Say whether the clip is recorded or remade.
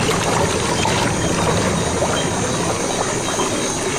recorded